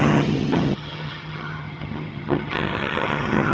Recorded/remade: remade